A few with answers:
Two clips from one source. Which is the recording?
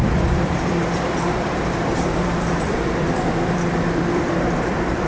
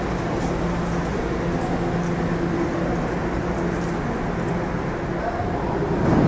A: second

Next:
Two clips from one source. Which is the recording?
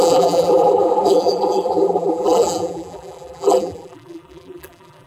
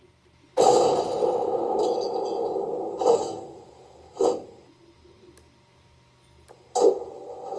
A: second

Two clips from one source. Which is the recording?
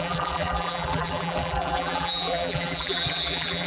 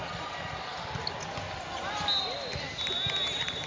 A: second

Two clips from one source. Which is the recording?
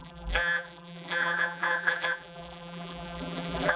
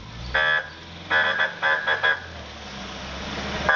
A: second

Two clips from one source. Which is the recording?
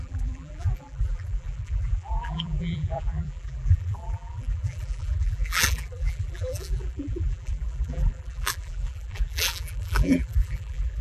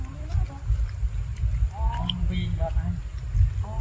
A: second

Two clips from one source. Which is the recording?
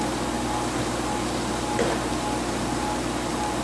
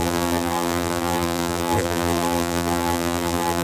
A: first